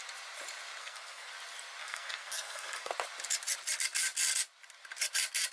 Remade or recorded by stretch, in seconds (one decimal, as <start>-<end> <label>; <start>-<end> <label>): 0.0-0.8 recorded; 0.8-1.3 remade; 1.3-1.8 recorded; 1.8-2.9 remade; 2.9-5.5 recorded